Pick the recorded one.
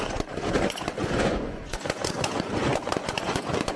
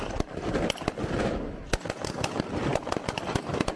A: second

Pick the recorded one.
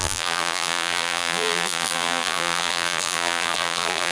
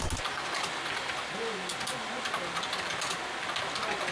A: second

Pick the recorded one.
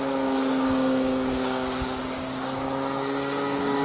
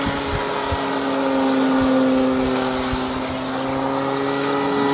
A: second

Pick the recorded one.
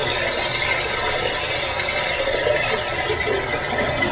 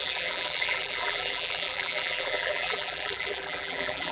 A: first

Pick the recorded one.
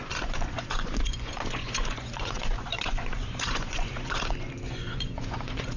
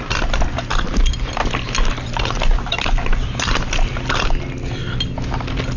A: second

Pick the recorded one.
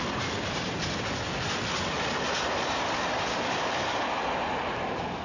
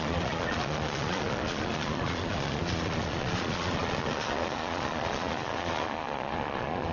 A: first